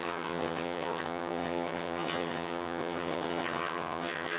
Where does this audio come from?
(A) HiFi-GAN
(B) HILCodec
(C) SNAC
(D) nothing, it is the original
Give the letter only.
A